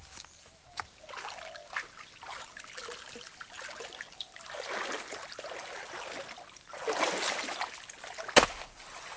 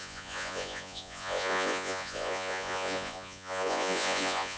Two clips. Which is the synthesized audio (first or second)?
second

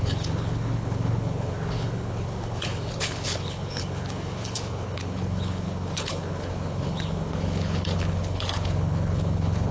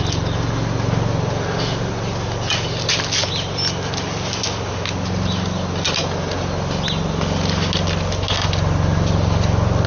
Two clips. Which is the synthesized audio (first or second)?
first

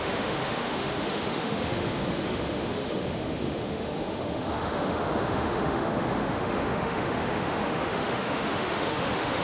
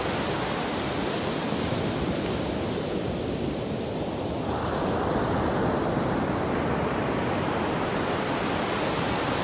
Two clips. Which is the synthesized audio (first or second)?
first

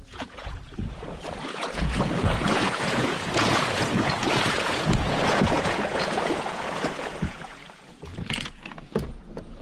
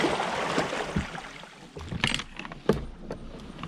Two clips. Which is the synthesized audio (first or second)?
first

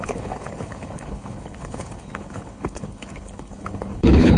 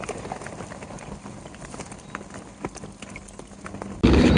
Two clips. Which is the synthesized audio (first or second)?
first